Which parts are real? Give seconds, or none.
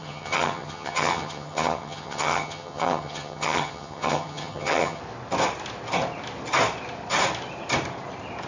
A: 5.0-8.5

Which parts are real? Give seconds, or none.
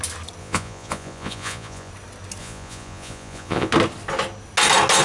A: 0.0-0.4; 1.9-2.4; 3.7-5.0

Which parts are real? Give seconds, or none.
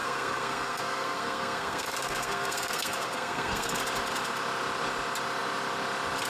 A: 3.8-6.3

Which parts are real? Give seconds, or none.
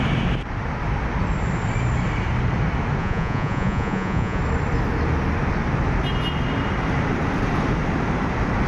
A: 0.0-3.0; 4.4-8.7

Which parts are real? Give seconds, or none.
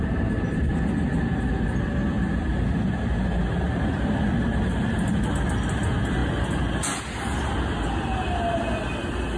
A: 0.0-9.4